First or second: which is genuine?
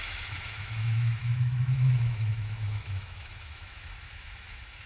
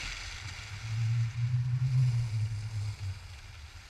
second